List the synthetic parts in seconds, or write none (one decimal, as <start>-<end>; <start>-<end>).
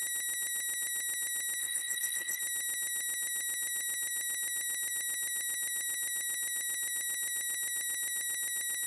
1.6-2.4